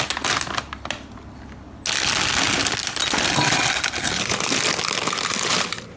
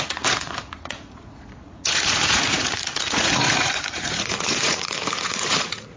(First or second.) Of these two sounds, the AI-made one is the second